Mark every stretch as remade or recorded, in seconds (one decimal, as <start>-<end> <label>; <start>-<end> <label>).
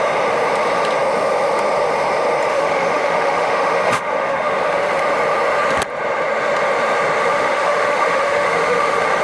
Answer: 0.0-2.5 recorded; 2.5-5.0 remade; 5.0-7.2 recorded; 7.2-9.2 remade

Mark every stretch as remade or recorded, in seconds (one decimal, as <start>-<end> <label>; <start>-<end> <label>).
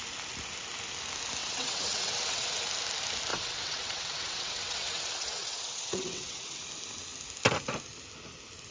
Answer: 0.0-1.4 recorded; 1.4-2.6 remade; 2.6-3.3 recorded; 3.3-6.6 remade; 6.6-8.7 recorded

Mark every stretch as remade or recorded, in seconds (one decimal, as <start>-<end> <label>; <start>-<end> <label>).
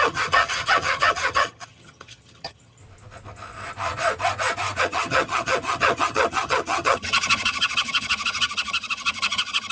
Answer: 0.0-2.8 remade; 2.8-4.8 recorded; 4.8-9.7 remade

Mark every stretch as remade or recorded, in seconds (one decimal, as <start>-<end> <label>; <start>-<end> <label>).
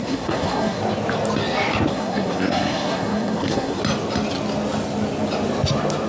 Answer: 0.0-0.8 remade; 0.8-1.9 recorded; 1.9-3.8 remade; 3.8-6.1 recorded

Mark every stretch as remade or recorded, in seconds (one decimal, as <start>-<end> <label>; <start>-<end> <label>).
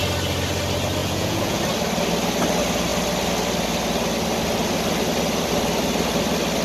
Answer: 0.0-1.0 recorded; 1.0-1.6 remade; 1.6-6.6 recorded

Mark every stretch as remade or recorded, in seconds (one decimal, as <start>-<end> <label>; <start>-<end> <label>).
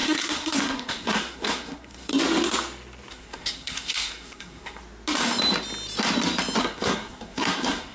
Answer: 0.0-2.1 remade; 2.1-3.1 recorded; 3.1-4.8 remade; 4.8-6.6 recorded; 6.6-7.9 remade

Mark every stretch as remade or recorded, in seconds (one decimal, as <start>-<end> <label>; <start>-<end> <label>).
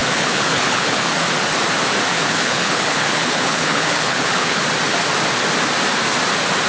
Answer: 0.0-1.1 remade; 1.1-2.1 recorded; 2.1-4.6 remade; 4.6-6.7 recorded